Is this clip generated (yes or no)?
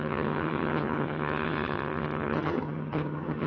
yes